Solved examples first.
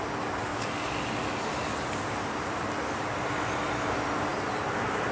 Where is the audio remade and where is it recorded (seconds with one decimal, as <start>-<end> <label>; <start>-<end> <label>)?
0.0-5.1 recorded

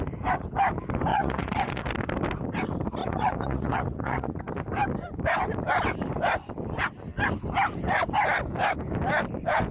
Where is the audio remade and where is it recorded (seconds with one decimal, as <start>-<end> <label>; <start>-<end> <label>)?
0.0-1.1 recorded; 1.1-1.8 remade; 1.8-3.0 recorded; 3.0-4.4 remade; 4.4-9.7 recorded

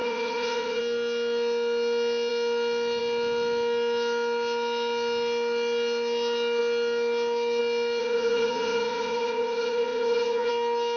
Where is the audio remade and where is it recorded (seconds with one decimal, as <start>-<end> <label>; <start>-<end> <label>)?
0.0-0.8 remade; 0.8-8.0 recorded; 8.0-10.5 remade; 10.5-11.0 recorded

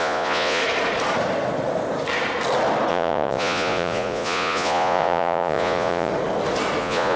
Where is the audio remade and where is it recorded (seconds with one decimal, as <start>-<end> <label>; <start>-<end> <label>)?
0.0-0.6 remade; 0.6-2.9 recorded; 2.9-6.1 remade; 6.1-6.8 recorded; 6.8-7.2 remade